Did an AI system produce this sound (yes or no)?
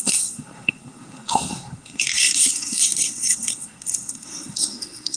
yes